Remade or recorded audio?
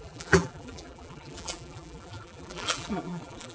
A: remade